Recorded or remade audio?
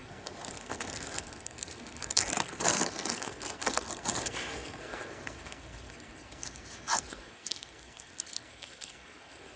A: remade